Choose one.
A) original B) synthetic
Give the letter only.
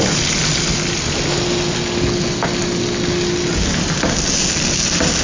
A